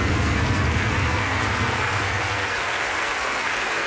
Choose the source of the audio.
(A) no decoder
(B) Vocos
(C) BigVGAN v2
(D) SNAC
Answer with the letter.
D